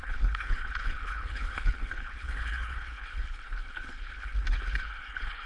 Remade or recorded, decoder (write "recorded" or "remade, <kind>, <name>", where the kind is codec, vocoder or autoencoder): remade, codec, HILCodec